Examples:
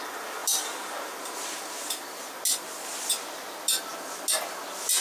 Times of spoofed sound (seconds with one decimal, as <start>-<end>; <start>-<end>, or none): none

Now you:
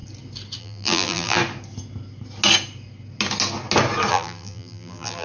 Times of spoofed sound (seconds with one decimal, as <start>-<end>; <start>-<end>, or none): 0.6-1.4; 4.1-5.2

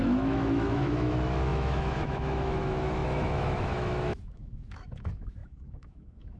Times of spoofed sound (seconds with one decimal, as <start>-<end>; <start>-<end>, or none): 0.0-6.4

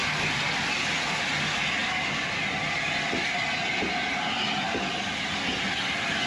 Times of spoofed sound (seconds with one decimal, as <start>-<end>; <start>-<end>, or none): none